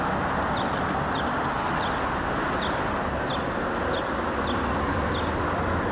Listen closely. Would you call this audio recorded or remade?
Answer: recorded